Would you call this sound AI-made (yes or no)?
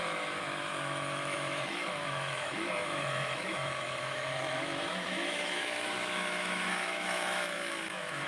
yes